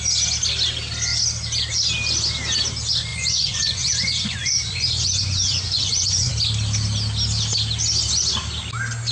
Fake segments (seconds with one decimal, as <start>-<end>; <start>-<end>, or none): 3.1-6.3